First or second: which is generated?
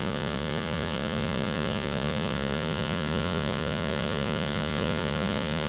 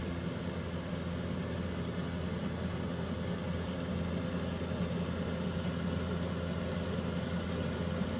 first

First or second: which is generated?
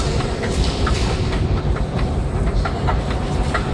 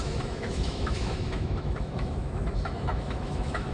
second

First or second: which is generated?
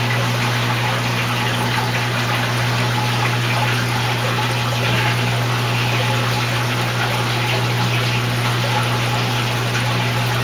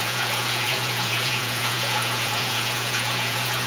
second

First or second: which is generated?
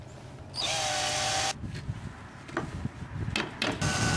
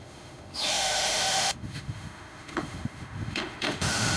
second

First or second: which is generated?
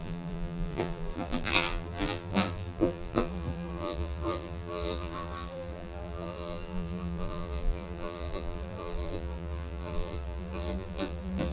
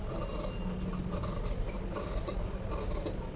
first